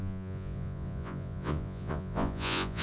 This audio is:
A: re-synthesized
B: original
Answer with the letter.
A